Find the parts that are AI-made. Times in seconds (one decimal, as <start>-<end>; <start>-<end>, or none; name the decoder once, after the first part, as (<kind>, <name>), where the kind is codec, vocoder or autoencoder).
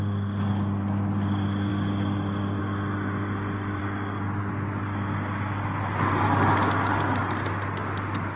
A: 3.8-4.5 (codec, DAC)